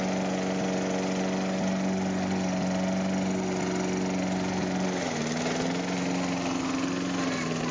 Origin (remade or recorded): recorded